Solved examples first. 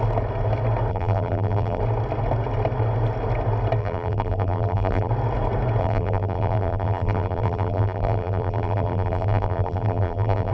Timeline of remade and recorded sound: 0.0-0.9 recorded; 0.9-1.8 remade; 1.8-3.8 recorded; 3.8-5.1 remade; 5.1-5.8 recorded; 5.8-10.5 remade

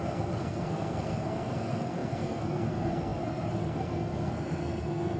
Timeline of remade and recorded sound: 0.0-5.2 remade

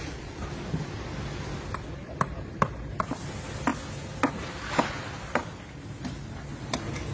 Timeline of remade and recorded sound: 0.0-7.1 recorded

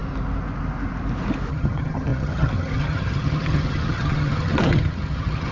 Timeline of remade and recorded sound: 0.0-1.5 recorded; 1.5-5.5 remade

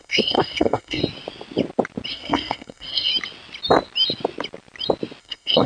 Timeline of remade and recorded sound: 0.0-1.0 remade; 1.0-2.1 recorded; 2.1-3.1 remade; 3.1-5.2 recorded; 5.2-5.7 remade

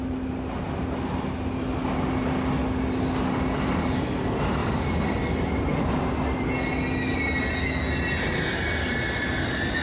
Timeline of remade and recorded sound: 0.0-4.6 recorded; 4.6-5.9 remade; 5.9-9.8 recorded

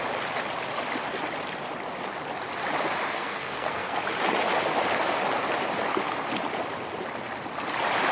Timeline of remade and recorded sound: 0.0-3.1 recorded; 3.1-4.0 remade; 4.0-8.1 recorded